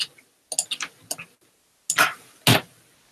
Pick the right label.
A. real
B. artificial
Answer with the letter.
A